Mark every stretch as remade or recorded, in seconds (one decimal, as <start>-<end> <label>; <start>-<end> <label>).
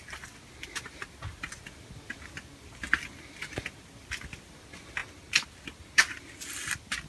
0.0-7.1 recorded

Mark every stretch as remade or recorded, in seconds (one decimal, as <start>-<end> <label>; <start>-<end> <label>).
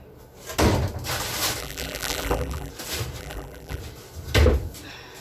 0.0-1.6 recorded; 1.6-2.7 remade; 2.7-3.2 recorded; 3.2-3.8 remade; 3.8-5.2 recorded